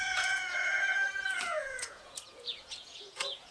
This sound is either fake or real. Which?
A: fake